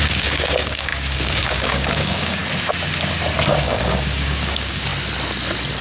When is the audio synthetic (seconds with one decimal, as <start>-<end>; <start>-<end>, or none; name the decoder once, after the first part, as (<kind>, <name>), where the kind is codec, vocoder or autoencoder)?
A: 0.0-2.4 (codec, DAC); 3.5-4.9